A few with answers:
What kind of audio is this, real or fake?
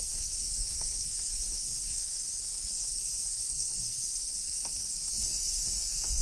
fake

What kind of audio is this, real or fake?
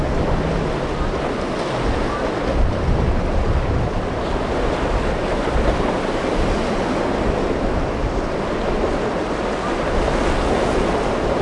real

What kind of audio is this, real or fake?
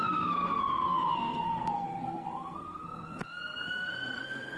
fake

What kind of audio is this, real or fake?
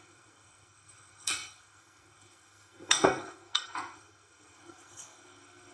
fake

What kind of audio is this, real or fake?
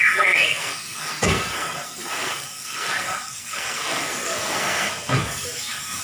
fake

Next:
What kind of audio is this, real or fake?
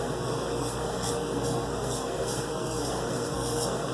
fake